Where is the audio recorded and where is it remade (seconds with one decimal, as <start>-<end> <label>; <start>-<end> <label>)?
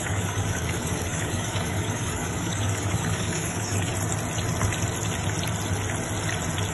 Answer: 0.0-3.9 remade; 3.9-6.7 recorded